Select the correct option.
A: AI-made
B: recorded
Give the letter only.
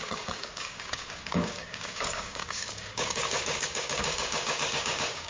A